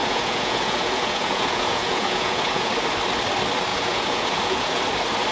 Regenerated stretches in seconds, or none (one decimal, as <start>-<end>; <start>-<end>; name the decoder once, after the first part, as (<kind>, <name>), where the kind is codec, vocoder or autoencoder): 0.0-2.7 (vocoder, Vocos); 3.7-4.8